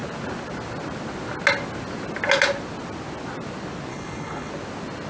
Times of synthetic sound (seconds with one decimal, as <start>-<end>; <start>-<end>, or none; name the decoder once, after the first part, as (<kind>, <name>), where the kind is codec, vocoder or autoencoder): 3.9-4.5 (codec, HILCodec)